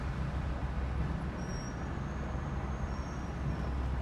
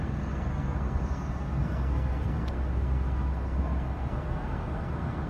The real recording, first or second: first